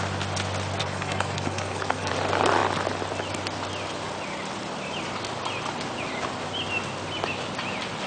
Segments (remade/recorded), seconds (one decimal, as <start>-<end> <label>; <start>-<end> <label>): 0.0-0.8 recorded; 0.8-2.1 remade; 2.1-8.1 recorded

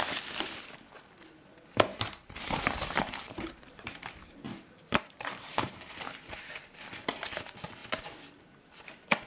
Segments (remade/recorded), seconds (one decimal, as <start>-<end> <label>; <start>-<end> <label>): 0.0-1.9 recorded; 1.9-6.0 remade; 6.0-7.8 recorded; 7.8-8.4 remade; 8.4-9.3 recorded